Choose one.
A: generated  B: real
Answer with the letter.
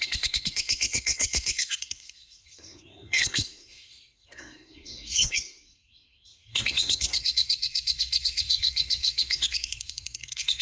A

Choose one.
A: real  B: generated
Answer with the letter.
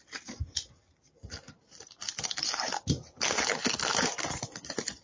A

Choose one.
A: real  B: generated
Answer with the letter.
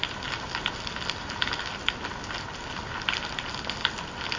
A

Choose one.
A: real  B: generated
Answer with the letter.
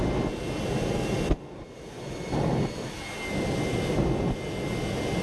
A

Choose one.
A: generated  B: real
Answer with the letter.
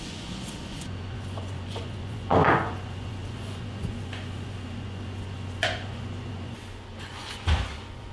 A